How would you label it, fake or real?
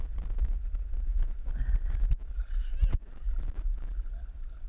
real